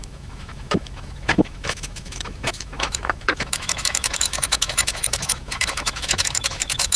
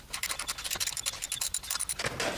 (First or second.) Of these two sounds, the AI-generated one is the first